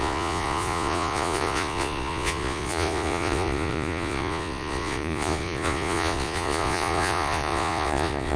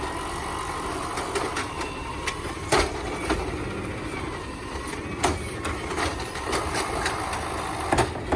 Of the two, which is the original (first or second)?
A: second